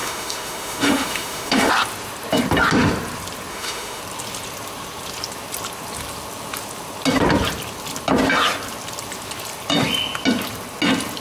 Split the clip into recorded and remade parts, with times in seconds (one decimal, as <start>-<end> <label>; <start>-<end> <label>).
0.0-1.7 remade; 1.7-3.5 recorded; 3.5-4.0 remade; 4.0-11.2 recorded